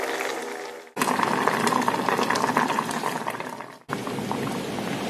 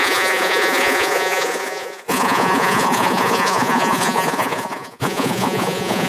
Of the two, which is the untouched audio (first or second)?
first